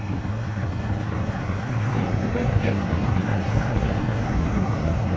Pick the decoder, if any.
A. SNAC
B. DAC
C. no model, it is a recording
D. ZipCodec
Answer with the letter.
A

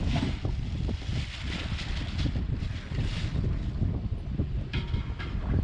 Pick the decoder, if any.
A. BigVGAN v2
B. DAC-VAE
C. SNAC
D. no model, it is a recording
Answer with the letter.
D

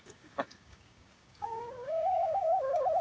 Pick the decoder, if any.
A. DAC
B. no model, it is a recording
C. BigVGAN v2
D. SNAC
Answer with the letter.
A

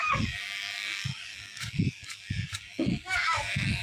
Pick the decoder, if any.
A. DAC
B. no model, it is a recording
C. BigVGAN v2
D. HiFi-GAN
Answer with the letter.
A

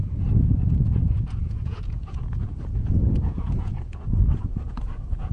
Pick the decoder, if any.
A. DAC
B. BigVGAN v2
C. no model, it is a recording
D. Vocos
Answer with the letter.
D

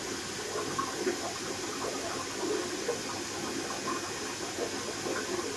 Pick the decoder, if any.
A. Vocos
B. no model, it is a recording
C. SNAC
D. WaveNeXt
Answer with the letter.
B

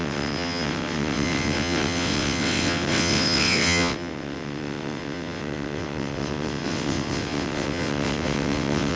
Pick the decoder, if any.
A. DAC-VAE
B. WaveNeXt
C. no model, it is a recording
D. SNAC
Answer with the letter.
B